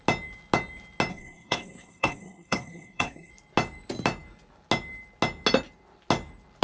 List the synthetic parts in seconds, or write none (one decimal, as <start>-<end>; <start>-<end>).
1.1-3.3

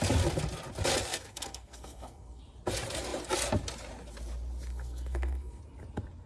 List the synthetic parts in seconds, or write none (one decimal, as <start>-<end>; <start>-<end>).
1.1-2.4; 4.7-5.6

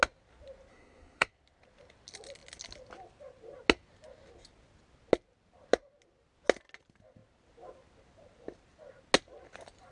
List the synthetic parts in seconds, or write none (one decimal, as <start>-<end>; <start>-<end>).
0.7-1.3